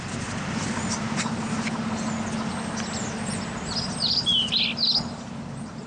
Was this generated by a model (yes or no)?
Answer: no